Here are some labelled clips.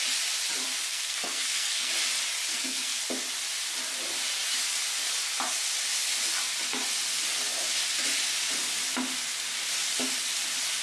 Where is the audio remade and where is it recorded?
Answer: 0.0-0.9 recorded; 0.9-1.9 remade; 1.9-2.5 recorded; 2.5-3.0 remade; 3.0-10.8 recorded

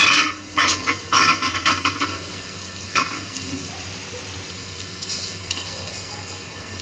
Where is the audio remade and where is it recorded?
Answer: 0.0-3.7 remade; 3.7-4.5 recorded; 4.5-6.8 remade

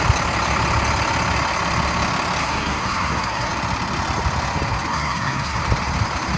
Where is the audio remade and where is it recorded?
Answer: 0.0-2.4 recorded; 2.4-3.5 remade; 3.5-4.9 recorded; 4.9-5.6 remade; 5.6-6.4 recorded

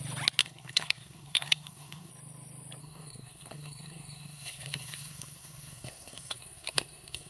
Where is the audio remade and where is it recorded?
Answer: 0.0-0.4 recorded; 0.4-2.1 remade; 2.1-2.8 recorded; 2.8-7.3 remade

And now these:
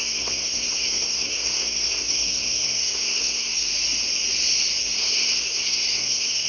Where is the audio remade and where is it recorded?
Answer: 0.0-3.7 remade; 3.7-4.8 recorded; 4.8-6.5 remade

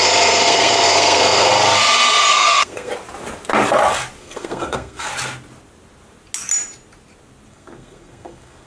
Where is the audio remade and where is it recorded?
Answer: 0.0-1.5 remade; 1.5-2.3 recorded; 2.3-2.9 remade; 2.9-4.2 recorded; 4.2-5.1 remade; 5.1-7.5 recorded; 7.5-8.7 remade

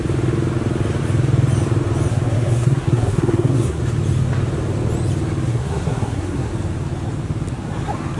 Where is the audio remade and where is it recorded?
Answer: 0.0-2.1 recorded; 2.1-3.8 remade; 3.8-5.5 recorded; 5.5-6.5 remade; 6.5-8.2 recorded

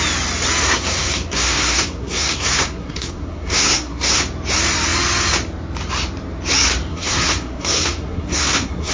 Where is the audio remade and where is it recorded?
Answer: 0.0-0.6 recorded; 0.6-4.2 remade; 4.2-6.9 recorded; 6.9-8.9 remade